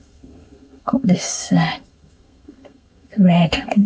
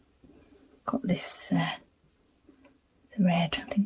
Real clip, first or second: second